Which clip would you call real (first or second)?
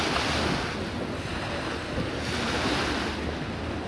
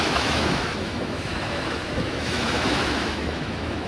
first